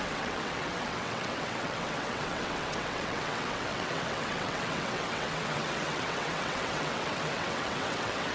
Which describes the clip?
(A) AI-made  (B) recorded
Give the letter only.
A